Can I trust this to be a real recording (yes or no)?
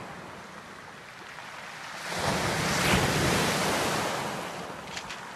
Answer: yes